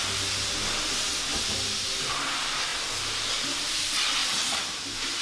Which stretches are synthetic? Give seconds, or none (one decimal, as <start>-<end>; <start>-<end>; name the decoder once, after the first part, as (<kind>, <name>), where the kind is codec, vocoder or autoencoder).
none